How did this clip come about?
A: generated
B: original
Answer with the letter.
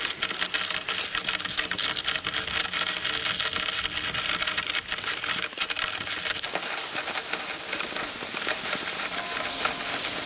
B